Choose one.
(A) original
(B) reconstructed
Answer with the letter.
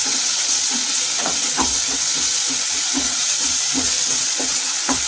B